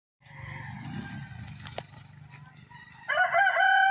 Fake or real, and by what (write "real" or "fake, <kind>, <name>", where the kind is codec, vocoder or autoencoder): real